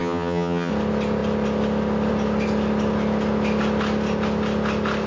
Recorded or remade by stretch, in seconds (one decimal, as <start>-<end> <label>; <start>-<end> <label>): 0.0-0.7 remade; 0.7-5.1 recorded